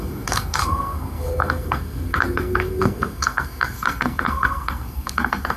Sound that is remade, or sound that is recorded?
remade